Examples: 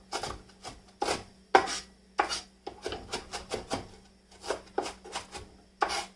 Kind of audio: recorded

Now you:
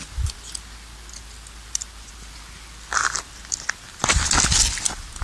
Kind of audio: recorded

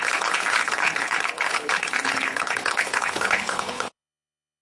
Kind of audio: remade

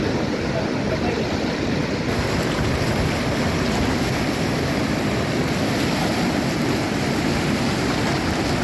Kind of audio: recorded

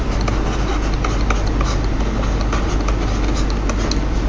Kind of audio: recorded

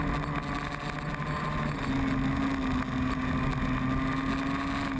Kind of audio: recorded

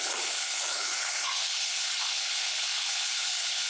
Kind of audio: remade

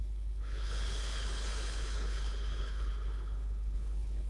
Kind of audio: remade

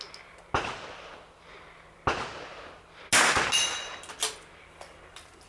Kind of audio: recorded